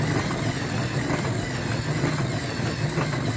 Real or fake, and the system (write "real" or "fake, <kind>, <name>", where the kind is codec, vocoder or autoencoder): real